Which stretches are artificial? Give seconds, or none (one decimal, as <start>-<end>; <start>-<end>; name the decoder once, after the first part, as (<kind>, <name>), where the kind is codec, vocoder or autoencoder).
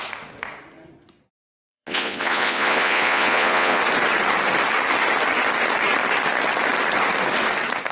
1.6-3.8 (vocoder, Vocos)